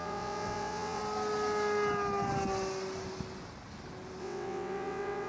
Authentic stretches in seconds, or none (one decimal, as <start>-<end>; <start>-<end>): 1.0-4.2